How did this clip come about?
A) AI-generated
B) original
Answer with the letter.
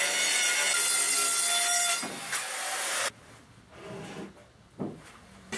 B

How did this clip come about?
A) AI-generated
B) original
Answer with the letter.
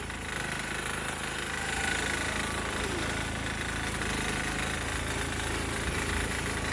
B